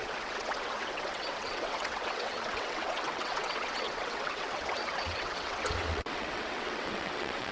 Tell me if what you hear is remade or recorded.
remade